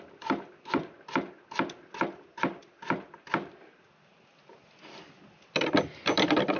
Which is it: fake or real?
real